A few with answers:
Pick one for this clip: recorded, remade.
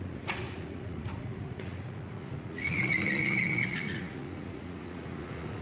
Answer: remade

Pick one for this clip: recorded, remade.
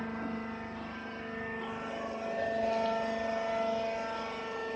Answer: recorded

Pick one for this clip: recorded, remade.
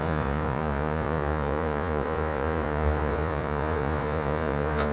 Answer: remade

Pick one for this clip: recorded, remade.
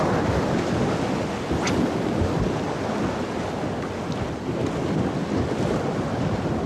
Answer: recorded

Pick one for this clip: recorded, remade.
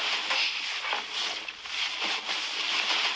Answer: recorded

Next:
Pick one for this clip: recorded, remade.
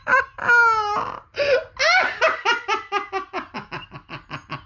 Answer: recorded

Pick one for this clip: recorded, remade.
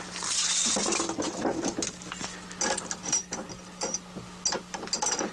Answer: recorded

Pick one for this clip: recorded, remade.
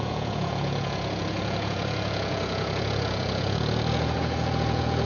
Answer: remade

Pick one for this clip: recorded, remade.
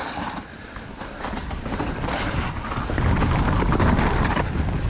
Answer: recorded